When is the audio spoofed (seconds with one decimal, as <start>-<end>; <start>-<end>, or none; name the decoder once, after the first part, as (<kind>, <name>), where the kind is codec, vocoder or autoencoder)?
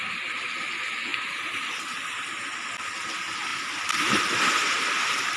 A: none